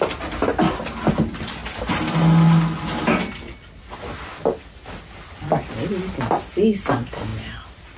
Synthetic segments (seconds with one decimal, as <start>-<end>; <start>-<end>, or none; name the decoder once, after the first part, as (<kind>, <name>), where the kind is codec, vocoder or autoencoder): none